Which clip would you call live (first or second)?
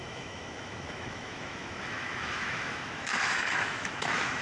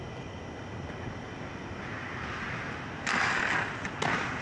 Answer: second